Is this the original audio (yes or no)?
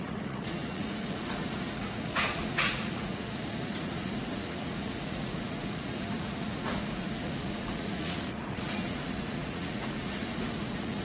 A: no